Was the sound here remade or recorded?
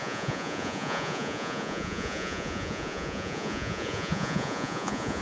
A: remade